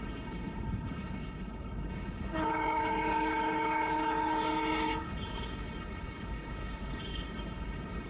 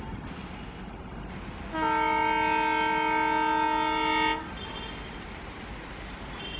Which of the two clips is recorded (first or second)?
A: second